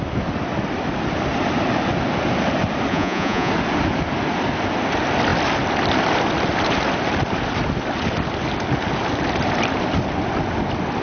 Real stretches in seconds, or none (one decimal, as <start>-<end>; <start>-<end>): 0.0-2.9; 3.5-11.0